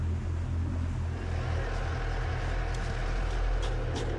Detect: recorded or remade recorded